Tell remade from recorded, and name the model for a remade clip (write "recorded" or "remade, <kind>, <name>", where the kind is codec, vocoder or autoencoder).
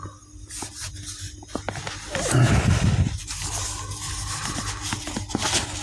recorded